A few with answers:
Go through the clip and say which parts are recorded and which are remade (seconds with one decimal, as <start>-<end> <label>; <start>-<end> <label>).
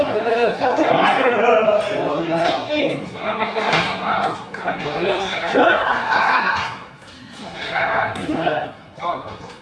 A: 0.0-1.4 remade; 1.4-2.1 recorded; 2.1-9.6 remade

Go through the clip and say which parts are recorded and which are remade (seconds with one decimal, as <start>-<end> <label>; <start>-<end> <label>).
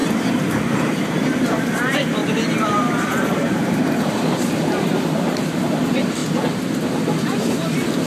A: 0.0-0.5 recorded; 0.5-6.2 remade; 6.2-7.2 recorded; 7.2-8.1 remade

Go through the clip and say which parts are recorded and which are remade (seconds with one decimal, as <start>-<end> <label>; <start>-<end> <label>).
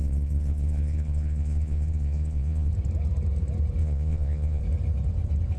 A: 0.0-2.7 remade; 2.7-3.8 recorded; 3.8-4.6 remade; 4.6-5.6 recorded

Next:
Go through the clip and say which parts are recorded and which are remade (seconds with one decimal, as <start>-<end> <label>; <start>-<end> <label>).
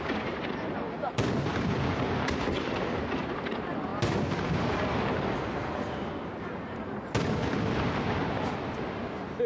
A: 0.0-9.5 recorded